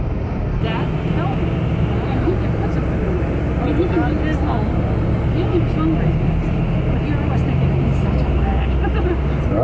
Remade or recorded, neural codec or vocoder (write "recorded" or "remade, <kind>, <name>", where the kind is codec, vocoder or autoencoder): recorded